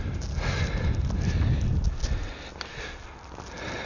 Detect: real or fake real